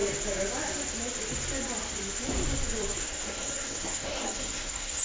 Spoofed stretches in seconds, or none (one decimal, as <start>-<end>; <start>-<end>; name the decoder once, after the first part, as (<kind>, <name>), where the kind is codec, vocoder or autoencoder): 3.0-5.0 (codec, SNAC)